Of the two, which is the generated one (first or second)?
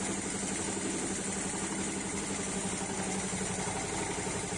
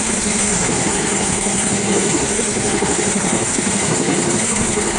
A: second